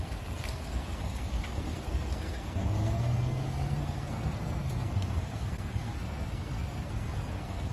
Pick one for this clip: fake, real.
fake